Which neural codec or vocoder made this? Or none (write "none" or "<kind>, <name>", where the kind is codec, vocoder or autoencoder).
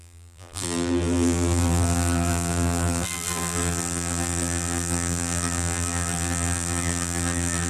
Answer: vocoder, BigVGAN v2